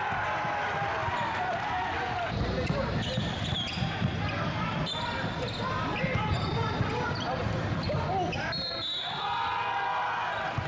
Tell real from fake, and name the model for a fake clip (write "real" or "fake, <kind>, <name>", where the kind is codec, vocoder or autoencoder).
real